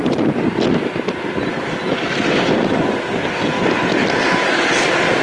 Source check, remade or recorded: recorded